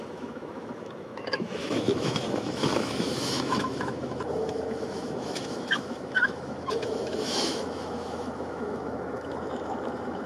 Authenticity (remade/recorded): remade